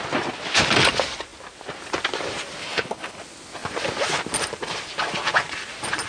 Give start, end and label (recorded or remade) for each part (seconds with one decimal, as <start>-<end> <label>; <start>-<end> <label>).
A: 0.0-2.6 recorded; 2.6-3.2 remade; 3.2-6.1 recorded